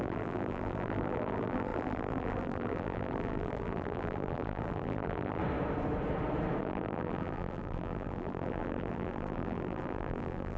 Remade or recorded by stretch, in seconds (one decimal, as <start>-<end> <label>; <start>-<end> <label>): 0.0-5.4 remade; 5.4-6.6 recorded; 6.6-10.6 remade